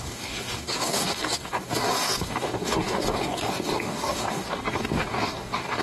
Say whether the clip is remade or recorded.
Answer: remade